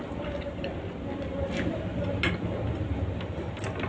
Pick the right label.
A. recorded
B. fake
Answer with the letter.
A